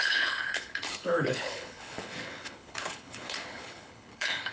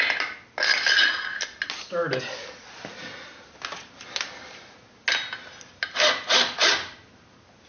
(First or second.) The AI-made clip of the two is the first